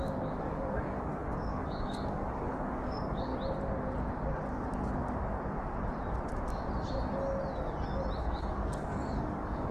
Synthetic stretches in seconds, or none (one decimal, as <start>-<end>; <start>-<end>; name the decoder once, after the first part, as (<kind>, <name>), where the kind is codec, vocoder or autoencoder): 0.0-3.3 (codec, DAC); 8.3-9.7